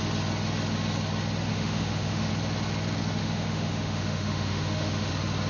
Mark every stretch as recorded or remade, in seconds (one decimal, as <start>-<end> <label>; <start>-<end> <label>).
0.0-1.5 recorded; 1.5-2.3 remade; 2.3-3.2 recorded; 3.2-5.1 remade; 5.1-5.5 recorded